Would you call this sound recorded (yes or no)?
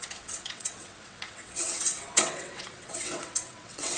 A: no